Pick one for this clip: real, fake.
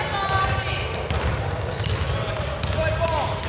real